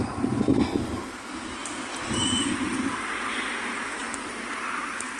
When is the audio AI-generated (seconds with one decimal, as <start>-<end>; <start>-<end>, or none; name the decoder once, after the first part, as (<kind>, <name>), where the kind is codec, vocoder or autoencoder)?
none